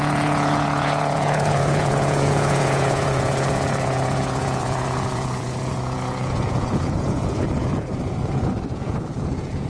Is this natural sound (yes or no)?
no